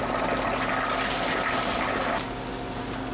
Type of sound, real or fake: real